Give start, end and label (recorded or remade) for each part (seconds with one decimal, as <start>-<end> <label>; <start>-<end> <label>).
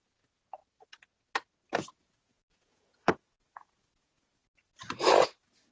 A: 0.0-0.6 remade; 0.6-1.9 recorded; 1.9-4.4 remade; 4.4-5.7 recorded